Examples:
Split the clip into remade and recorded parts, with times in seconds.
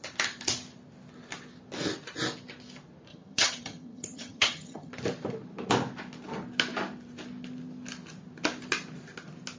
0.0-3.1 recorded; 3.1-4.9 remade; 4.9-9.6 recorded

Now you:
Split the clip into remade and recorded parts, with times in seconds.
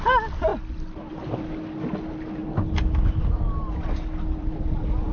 0.0-5.1 recorded